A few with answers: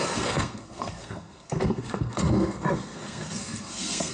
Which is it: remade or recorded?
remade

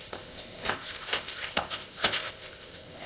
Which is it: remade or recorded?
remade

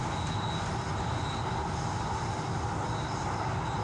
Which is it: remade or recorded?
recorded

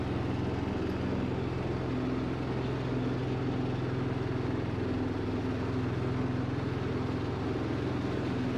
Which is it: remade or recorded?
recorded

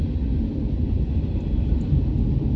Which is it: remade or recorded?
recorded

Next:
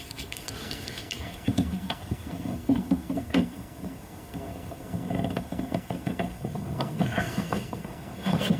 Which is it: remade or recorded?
remade